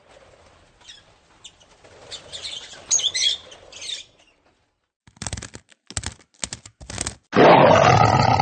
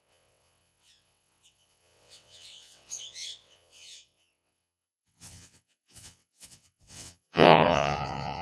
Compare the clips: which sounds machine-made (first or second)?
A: second